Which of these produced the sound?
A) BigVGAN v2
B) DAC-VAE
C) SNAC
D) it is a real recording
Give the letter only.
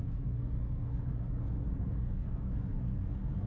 C